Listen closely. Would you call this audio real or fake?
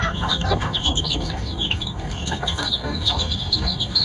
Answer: fake